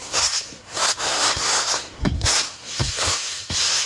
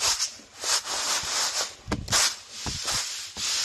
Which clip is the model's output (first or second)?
first